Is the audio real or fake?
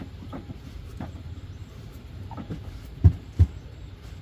fake